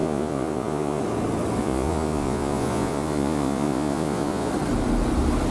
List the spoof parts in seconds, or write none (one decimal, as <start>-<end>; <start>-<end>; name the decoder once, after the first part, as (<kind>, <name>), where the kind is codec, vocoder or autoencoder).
0.0-1.0 (vocoder, Vocos); 1.6-4.5